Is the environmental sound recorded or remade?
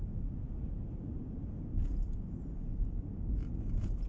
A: recorded